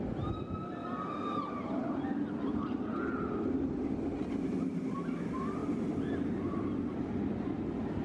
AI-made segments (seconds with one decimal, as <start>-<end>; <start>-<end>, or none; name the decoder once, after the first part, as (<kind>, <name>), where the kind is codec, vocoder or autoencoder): 0.0-5.6 (vocoder, BigVGAN v2); 6.5-8.0

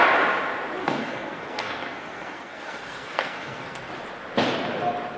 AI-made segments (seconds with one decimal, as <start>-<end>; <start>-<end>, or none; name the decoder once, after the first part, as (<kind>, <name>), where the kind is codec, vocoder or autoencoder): 0.8-3.9 (codec, SNAC)

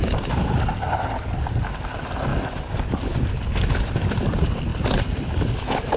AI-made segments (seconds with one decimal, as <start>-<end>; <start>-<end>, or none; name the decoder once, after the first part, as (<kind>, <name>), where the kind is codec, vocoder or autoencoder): none

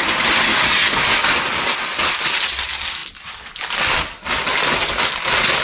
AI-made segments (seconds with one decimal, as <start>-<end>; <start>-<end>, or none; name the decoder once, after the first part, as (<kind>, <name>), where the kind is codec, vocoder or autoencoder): none

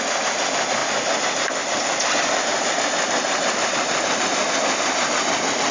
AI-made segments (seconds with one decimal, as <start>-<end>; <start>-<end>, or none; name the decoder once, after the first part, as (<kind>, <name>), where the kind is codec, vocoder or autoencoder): none

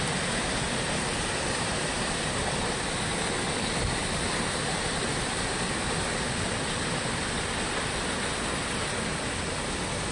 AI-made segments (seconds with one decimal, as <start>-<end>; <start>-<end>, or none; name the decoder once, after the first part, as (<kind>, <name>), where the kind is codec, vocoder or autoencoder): none